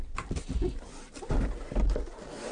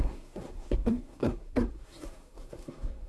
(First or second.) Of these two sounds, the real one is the first